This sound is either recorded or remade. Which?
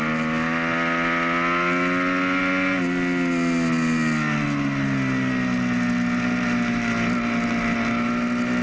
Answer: recorded